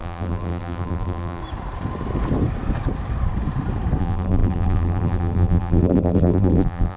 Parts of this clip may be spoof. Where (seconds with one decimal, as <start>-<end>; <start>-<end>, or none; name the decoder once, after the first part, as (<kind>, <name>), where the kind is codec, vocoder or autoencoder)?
0.0-1.4 (vocoder, BigVGAN v2); 4.0-7.0